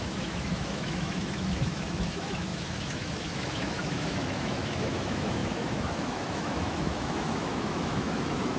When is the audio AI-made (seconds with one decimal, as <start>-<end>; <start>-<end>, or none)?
0.0-8.6